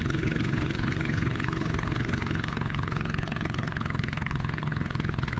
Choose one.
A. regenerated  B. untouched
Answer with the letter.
A